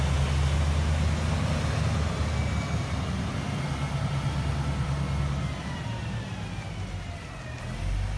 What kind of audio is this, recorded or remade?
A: recorded